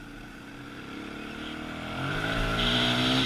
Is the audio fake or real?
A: real